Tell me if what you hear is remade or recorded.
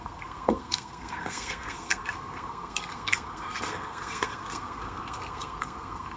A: remade